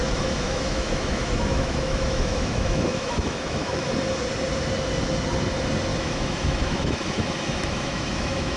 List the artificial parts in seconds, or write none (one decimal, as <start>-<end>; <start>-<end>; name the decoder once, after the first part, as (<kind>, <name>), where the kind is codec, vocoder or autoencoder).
0.0-3.9 (autoencoder, DAC-VAE); 5.9-8.6